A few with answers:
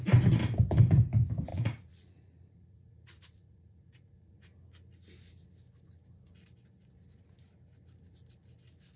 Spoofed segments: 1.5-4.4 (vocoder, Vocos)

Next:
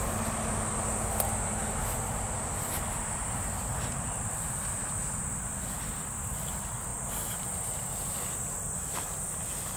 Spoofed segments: none

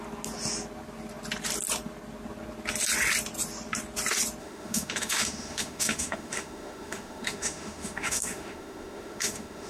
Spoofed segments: 4.4-9.7 (autoencoder, DAC-VAE)

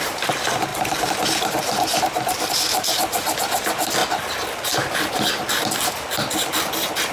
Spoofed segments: 0.7-2.5 (vocoder, BigVGAN v2)

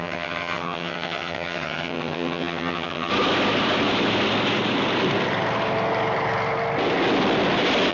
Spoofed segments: 0.0-3.1 (vocoder, HiFi-GAN)